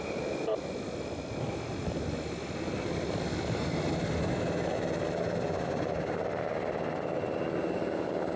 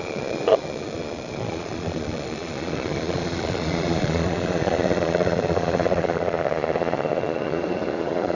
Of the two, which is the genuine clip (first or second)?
first